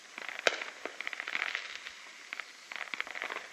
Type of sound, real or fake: real